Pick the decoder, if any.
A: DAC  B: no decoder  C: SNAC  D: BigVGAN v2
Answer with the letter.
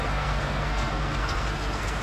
C